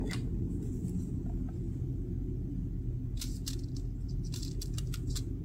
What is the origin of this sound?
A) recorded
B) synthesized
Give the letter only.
A